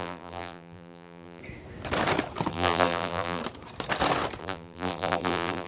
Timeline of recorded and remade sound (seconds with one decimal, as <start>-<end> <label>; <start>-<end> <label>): 0.0-1.4 remade; 1.4-2.5 recorded; 2.5-3.4 remade; 3.4-4.4 recorded; 4.4-5.7 remade